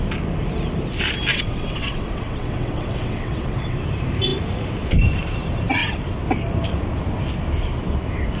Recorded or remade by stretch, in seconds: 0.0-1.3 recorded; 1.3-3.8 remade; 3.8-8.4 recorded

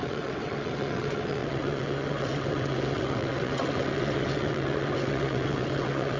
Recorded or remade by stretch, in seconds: 0.0-6.2 remade